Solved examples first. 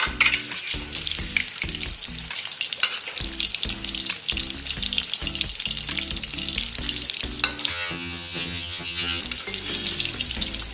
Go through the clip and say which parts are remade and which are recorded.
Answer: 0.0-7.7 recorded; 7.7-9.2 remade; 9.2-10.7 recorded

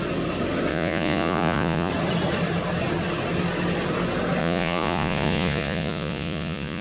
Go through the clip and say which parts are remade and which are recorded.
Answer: 0.0-0.7 recorded; 0.7-1.9 remade; 1.9-4.4 recorded; 4.4-6.8 remade

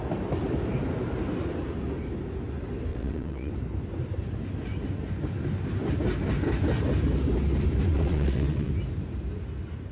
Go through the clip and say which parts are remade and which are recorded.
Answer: 0.0-2.9 recorded; 2.9-3.5 remade; 3.5-7.9 recorded; 7.9-8.7 remade; 8.7-9.9 recorded

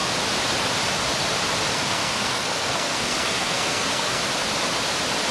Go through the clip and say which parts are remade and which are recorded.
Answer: 0.0-1.7 recorded; 1.7-4.2 remade; 4.2-5.3 recorded

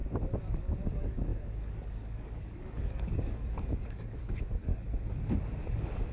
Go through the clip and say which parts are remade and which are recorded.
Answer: 0.0-0.6 recorded; 0.6-4.7 remade; 4.7-6.1 recorded